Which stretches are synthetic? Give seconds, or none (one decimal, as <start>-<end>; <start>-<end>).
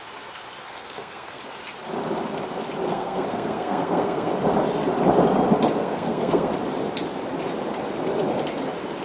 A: 0.6-1.4; 2.9-4.3; 5.8-6.5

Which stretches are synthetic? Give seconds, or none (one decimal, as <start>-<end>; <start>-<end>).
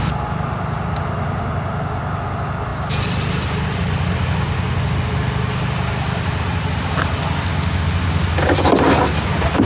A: none